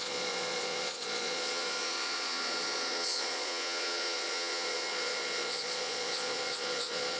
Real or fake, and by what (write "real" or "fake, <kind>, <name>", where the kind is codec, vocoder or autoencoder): fake, vocoder, Vocos